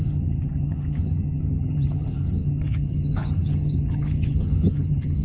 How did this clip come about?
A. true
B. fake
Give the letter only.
B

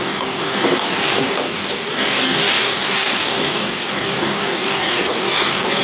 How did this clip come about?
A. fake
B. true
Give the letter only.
A